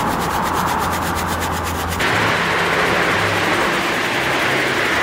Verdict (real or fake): real